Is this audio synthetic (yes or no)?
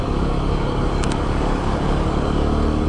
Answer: yes